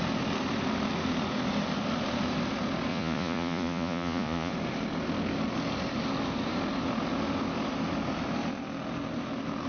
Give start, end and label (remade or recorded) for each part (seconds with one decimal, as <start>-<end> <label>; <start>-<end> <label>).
0.0-2.9 recorded; 2.9-4.5 remade; 4.5-9.7 recorded

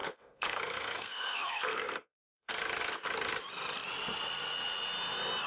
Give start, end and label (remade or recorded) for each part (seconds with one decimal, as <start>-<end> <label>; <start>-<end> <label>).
0.0-2.5 remade; 2.5-5.5 recorded

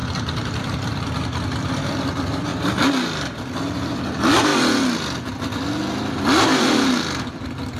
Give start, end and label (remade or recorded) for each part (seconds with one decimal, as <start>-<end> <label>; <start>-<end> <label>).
0.0-2.5 remade; 2.5-3.8 recorded; 3.8-4.5 remade; 4.5-5.2 recorded; 5.2-7.8 remade

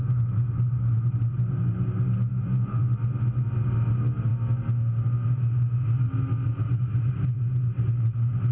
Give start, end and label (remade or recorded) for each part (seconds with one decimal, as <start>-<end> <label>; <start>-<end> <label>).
0.0-2.3 recorded; 2.3-2.8 remade; 2.8-8.5 recorded

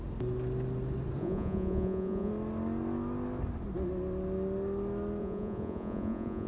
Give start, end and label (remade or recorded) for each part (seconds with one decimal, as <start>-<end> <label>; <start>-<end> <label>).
0.0-1.2 recorded; 1.2-2.3 remade; 2.3-5.2 recorded; 5.2-6.5 remade